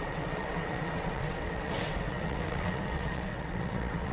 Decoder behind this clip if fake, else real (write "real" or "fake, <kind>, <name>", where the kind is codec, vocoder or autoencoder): fake, vocoder, WaveNeXt